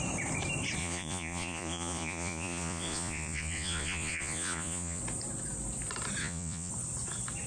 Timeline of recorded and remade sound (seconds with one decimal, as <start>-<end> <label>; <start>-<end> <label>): 0.0-0.8 recorded; 0.8-5.0 remade; 5.0-6.2 recorded; 6.2-6.7 remade; 6.7-7.5 recorded